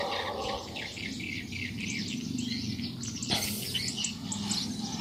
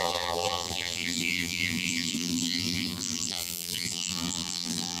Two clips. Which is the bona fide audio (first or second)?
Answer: first